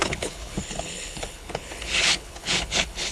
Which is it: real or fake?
fake